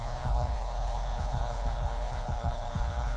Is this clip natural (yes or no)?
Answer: no